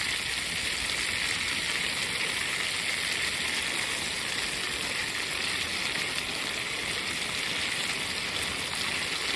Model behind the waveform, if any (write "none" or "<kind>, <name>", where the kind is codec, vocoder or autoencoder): none